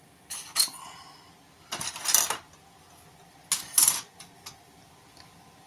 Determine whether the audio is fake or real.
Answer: real